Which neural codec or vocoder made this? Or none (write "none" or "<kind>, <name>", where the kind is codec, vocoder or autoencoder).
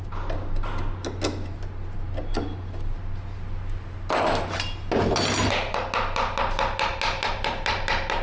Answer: none